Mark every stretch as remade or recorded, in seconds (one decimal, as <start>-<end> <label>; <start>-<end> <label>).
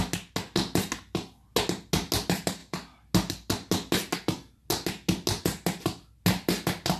0.0-7.0 recorded